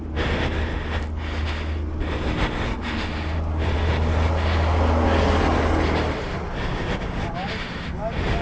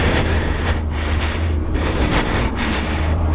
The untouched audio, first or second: first